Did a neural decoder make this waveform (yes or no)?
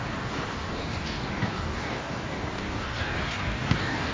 yes